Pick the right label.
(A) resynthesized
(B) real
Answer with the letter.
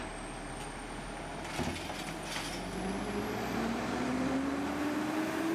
B